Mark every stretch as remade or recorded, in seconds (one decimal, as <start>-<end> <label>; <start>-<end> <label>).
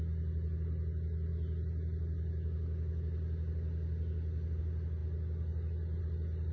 0.0-6.5 recorded